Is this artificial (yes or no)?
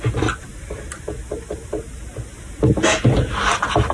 no